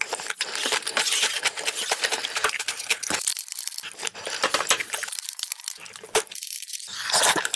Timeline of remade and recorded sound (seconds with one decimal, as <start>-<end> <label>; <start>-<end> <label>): 0.0-3.3 remade; 3.3-4.0 recorded; 4.0-7.6 remade